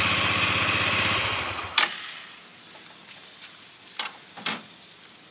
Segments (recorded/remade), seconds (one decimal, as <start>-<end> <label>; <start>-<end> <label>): 0.0-5.3 recorded